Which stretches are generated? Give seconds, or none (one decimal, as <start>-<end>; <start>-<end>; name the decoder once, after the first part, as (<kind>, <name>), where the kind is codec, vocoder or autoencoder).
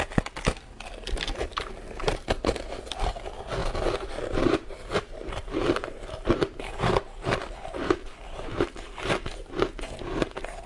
1.5-2.5 (vocoder, BigVGAN v2); 3.6-8.6